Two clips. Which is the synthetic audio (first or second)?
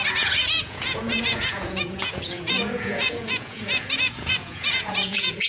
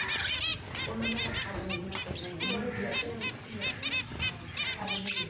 first